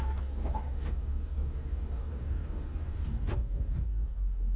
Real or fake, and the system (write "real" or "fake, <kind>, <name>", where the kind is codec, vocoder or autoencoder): fake, codec, DAC